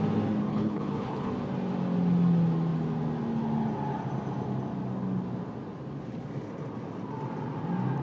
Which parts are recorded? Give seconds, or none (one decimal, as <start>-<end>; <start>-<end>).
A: 0.0-0.5; 1.3-8.0